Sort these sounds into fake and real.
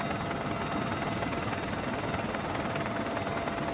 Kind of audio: real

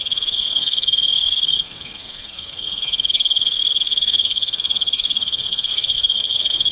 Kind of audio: fake